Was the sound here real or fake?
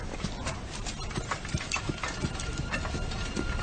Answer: fake